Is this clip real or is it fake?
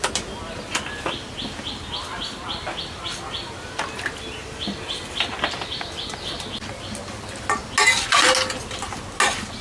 real